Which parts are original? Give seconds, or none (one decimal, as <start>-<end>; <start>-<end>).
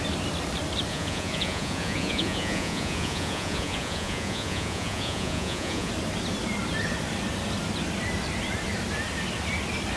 0.0-0.9; 5.9-10.0